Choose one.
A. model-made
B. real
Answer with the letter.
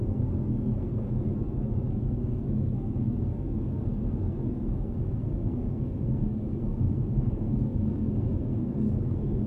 A